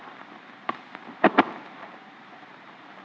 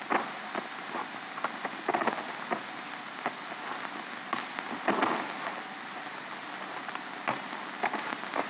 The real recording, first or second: second